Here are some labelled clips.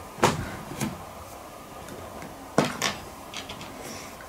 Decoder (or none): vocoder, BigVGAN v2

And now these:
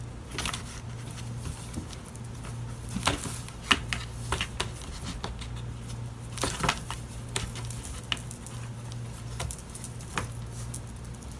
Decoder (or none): none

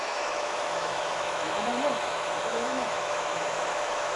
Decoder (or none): autoencoder, DAC-VAE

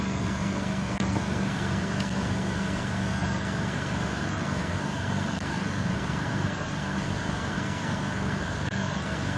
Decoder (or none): codec, SNAC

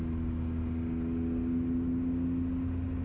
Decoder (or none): none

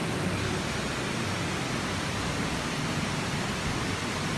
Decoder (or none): none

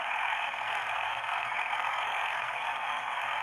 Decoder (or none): codec, SNAC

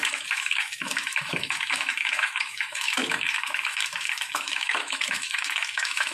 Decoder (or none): autoencoder, DAC-VAE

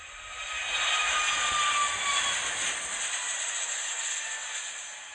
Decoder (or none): none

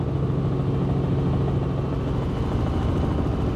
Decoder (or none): none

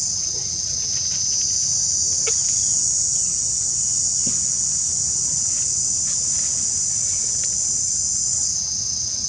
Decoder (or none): none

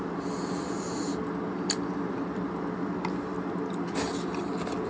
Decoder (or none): none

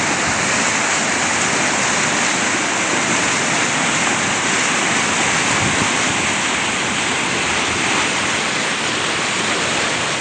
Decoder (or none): none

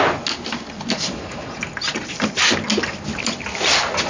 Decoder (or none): none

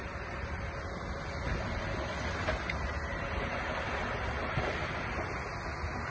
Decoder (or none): none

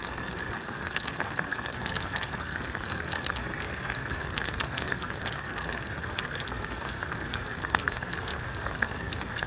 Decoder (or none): codec, SNAC